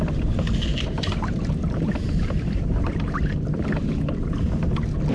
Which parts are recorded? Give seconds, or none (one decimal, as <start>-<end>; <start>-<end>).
0.0-0.7; 3.8-5.1